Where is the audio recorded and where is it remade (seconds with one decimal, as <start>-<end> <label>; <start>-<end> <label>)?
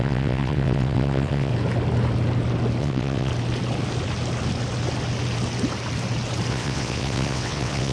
0.0-1.5 remade; 1.5-2.8 recorded; 2.8-3.3 remade; 3.3-6.5 recorded; 6.5-7.9 remade